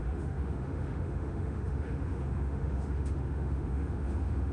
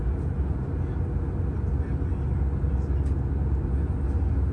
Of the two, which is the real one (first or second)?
second